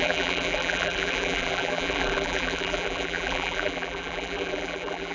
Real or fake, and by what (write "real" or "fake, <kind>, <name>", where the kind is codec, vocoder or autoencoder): fake, vocoder, BigVGAN v2